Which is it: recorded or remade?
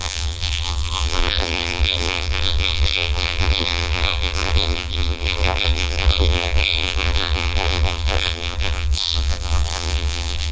remade